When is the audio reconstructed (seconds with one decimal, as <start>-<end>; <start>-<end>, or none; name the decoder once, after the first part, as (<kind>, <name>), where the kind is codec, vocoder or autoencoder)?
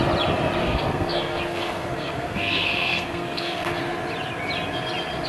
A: 0.6-3.8 (codec, SNAC)